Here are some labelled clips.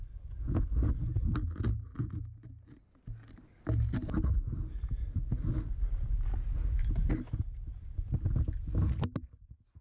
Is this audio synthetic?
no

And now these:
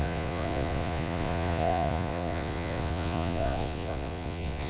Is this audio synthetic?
yes